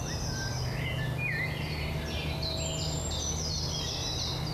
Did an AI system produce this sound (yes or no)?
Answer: no